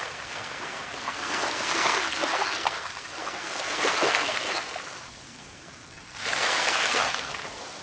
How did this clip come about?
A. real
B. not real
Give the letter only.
B